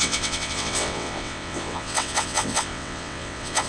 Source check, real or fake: fake